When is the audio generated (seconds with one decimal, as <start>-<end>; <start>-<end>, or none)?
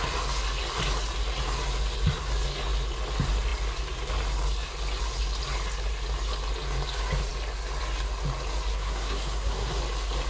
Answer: 8.7-9.8